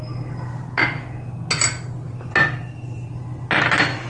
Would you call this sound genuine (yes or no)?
yes